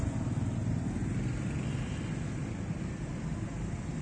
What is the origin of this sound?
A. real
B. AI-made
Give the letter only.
A